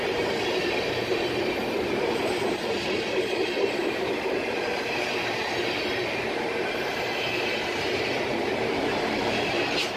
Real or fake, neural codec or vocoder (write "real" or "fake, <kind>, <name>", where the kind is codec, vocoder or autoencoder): fake, vocoder, BigVGAN v2